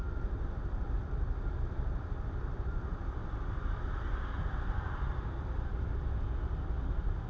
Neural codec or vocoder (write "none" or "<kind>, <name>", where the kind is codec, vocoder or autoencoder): vocoder, BigVGAN v2